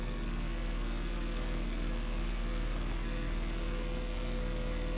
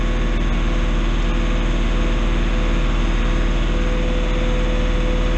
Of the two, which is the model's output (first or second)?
first